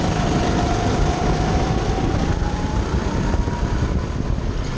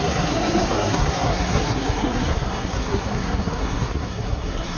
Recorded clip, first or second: first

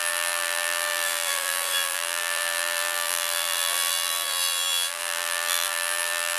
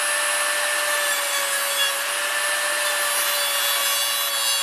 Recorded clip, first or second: second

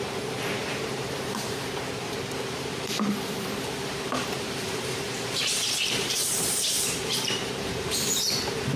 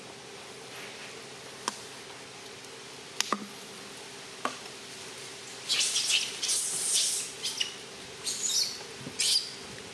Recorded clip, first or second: second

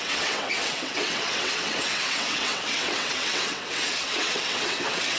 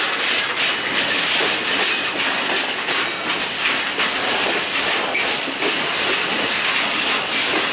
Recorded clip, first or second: second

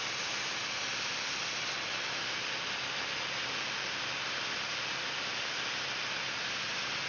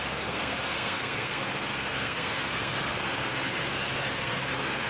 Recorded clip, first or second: first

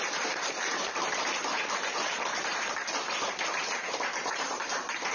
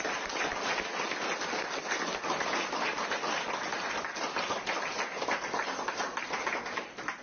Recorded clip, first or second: second